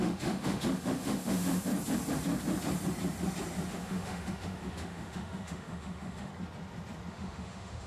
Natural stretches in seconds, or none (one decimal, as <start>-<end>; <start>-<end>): 1.7-3.7; 6.3-7.1